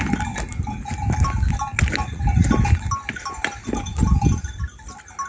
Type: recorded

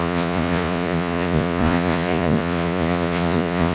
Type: remade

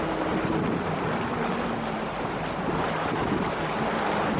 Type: recorded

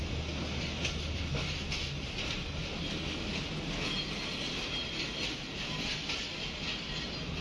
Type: recorded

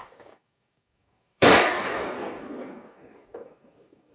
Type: remade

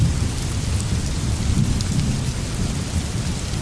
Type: recorded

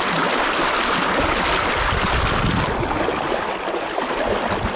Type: recorded